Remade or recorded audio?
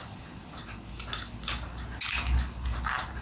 recorded